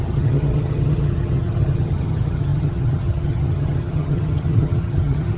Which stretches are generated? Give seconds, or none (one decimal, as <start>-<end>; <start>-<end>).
0.0-5.4